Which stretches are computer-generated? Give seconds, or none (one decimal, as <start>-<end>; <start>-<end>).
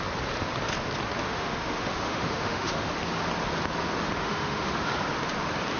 1.2-3.0; 4.2-4.8